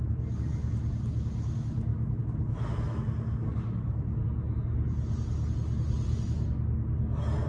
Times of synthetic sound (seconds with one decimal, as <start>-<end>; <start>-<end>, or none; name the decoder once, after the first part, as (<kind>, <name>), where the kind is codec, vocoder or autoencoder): 1.9-3.0 (autoencoder, DAC-VAE)